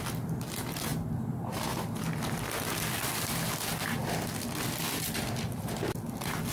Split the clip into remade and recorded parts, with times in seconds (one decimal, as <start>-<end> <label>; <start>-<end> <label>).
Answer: 0.0-6.5 recorded